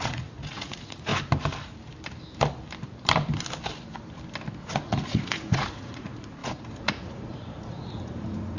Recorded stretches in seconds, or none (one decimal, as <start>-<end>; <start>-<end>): 1.1-4.6